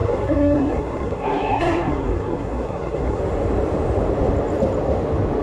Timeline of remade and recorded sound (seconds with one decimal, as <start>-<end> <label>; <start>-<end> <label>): 0.0-3.2 remade; 3.2-5.4 recorded